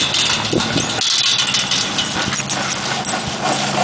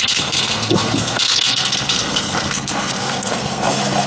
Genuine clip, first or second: first